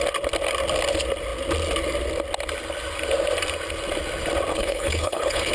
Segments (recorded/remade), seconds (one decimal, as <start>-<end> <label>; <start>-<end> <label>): 0.0-4.5 recorded; 4.5-5.5 remade